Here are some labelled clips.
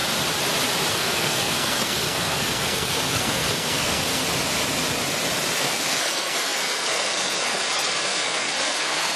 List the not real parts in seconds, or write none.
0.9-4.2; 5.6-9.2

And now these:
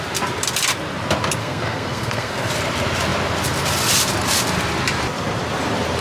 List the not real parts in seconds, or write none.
1.4-2.5